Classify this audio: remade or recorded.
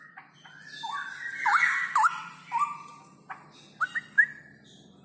recorded